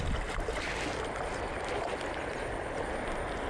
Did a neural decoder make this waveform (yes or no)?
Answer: no